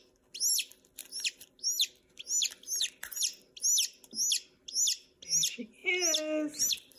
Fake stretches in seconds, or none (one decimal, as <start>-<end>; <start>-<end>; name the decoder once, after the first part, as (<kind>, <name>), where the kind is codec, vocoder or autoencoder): none